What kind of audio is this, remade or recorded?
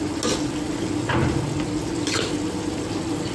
recorded